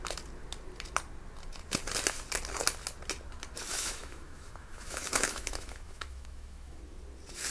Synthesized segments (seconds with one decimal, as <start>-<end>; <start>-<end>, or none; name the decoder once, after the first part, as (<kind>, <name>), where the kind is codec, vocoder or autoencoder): 3.7-6.8 (autoencoder, DAC-VAE)